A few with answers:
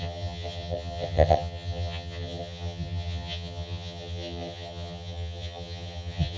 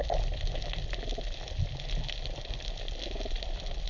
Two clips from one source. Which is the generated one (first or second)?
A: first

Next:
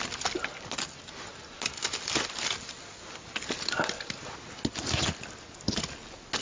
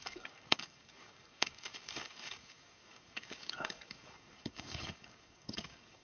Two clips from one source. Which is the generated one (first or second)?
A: second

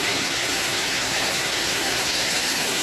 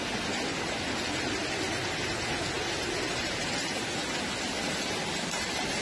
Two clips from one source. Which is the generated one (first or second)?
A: first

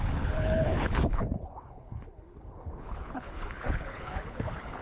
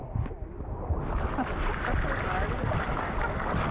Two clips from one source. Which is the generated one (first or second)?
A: first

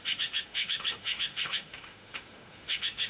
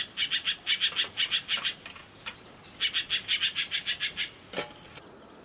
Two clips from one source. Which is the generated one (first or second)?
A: first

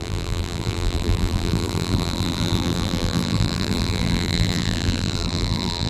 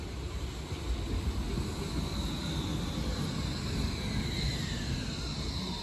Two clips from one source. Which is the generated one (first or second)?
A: first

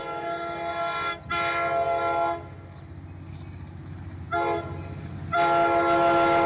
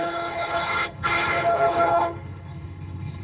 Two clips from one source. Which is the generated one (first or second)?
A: second